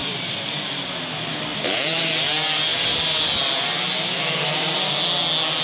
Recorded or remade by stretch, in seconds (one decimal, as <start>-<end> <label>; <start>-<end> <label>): 0.0-0.9 remade; 0.9-1.5 recorded; 1.5-2.1 remade; 2.1-5.6 recorded